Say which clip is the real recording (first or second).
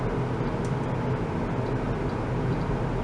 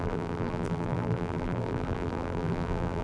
first